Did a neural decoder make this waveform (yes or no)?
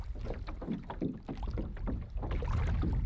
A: no